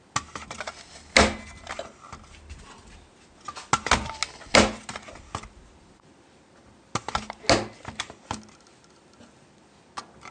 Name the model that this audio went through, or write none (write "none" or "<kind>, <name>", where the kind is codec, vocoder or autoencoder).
none